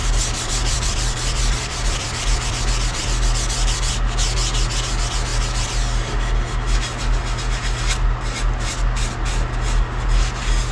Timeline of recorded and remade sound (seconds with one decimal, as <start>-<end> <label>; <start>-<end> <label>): 0.0-3.9 remade; 3.9-10.7 recorded